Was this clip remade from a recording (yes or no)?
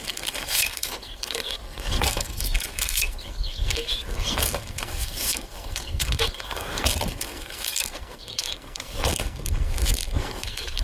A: yes